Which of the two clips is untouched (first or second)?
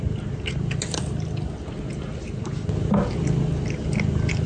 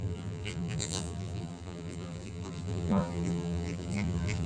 first